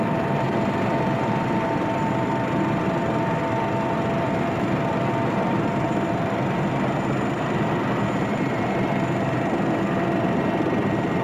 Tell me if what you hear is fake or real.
fake